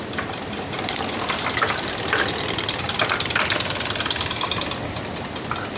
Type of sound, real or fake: fake